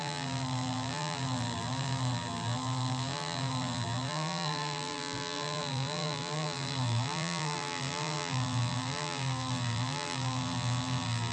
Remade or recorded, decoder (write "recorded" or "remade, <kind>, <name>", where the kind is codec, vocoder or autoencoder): remade, vocoder, BigVGAN v2